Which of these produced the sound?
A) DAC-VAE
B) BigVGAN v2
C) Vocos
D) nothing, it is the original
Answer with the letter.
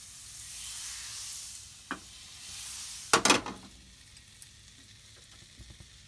D